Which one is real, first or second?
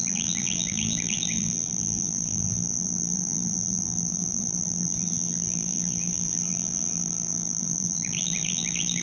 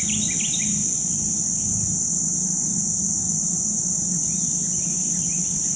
second